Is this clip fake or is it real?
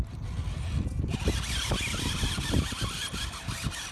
real